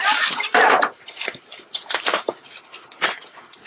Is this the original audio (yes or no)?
no